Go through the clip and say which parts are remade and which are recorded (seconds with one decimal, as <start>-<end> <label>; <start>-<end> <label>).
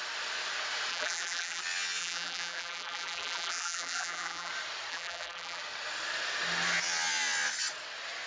0.0-0.9 recorded; 0.9-1.6 remade; 1.6-2.0 recorded; 2.0-4.5 remade; 4.5-4.9 recorded; 4.9-5.6 remade; 5.6-8.3 recorded